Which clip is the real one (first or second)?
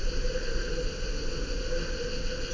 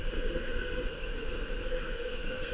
first